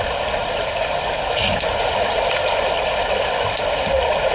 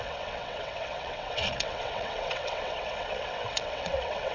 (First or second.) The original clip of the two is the first